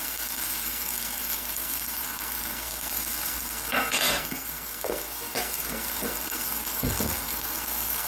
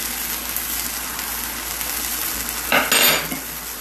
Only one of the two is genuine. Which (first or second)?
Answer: second